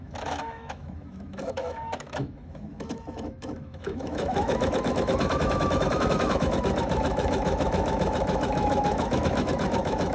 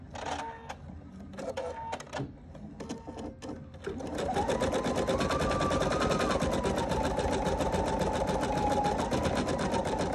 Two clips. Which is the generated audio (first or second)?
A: first